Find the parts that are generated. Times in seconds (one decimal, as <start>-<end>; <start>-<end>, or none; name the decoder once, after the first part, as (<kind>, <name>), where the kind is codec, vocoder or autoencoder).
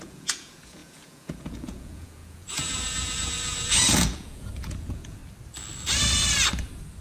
0.0-5.2 (vocoder, Vocos)